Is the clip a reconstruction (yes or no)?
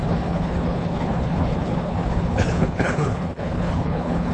yes